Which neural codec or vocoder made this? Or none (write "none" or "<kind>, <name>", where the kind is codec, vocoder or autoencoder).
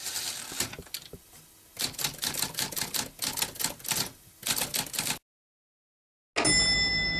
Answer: none